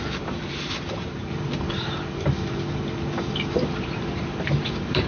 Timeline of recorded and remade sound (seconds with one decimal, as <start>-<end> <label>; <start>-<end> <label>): 0.0-1.2 remade; 1.2-3.5 recorded; 3.5-5.1 remade